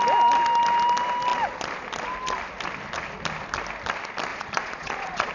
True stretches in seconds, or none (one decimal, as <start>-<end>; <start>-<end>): 0.0-4.3